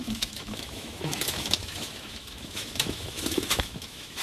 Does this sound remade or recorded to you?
remade